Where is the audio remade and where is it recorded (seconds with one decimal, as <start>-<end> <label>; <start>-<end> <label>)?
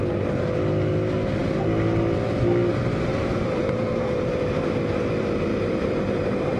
0.0-3.1 recorded; 3.1-4.7 remade; 4.7-5.5 recorded; 5.5-6.6 remade